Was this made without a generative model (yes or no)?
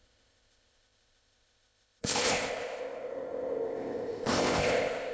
no